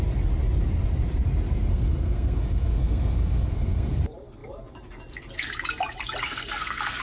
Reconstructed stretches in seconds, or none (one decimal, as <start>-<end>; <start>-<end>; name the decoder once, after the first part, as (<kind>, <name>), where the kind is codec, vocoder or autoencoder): 1.7-4.0 (codec, SNAC); 6.3-7.0